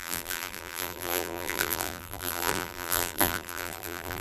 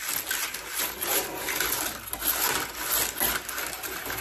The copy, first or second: first